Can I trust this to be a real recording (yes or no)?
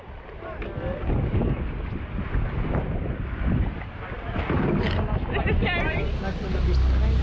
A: yes